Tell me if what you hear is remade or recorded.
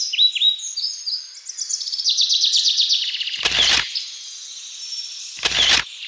recorded